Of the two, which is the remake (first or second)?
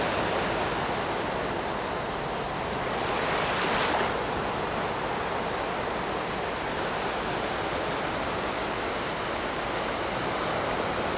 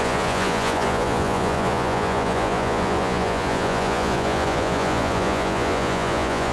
second